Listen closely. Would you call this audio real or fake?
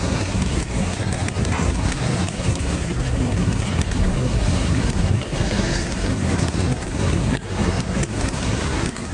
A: fake